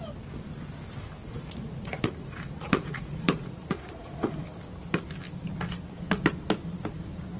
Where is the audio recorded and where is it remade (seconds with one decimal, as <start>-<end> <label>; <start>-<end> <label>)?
0.0-1.2 recorded; 1.2-4.4 remade; 4.4-7.4 recorded